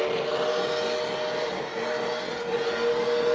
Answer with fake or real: real